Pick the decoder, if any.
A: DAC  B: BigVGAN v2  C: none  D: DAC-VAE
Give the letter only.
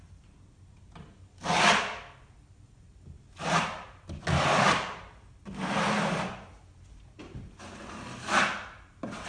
C